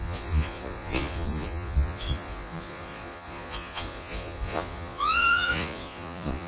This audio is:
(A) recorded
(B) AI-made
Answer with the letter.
B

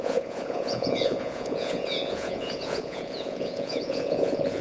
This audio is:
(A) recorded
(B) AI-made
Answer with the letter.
B